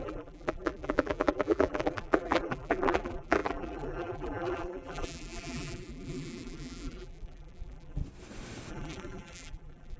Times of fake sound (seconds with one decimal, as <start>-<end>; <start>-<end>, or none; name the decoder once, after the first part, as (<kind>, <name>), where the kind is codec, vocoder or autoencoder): 0.0-8.0 (vocoder, BigVGAN v2); 8.7-10.0